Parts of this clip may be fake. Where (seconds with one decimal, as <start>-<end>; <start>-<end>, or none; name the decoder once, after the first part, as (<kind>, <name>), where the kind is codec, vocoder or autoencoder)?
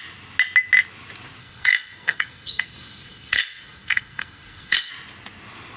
1.4-4.9 (codec, SNAC)